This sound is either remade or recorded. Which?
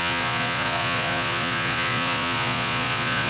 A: remade